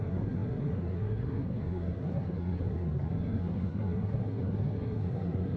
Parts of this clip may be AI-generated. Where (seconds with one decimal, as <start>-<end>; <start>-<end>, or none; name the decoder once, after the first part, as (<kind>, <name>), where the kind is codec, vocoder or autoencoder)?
0.0-5.6 (codec, SNAC)